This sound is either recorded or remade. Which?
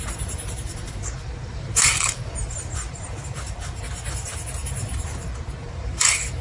remade